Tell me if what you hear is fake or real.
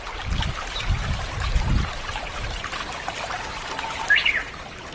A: real